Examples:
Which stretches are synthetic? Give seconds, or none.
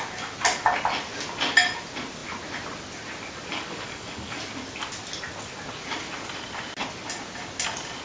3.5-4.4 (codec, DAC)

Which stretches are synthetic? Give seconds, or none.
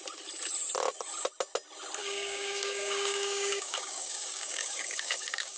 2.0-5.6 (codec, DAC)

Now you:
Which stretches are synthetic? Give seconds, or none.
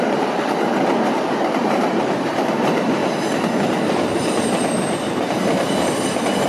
0.0-3.0 (vocoder, BigVGAN v2); 4.4-6.5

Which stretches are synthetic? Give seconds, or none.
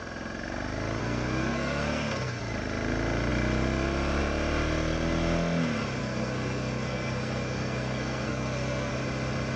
1.0-2.4 (codec, SNAC); 6.0-8.9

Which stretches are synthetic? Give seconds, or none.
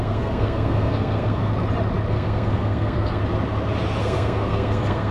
0.0-1.5 (codec, SNAC); 2.1-3.2; 4.0-5.1